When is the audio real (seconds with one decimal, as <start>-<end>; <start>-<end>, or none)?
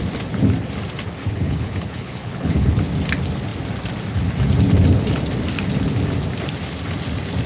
0.0-1.2; 2.8-7.5